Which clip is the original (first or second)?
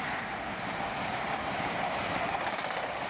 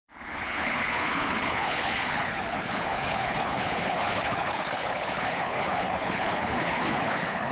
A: first